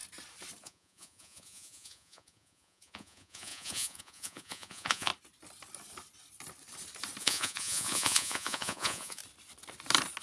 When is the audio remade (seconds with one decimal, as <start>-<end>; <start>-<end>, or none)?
0.6-5.1; 7.2-9.2